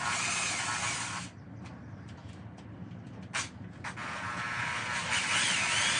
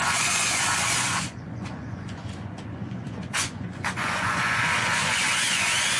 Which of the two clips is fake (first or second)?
second